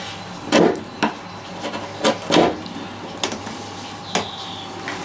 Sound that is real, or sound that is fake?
real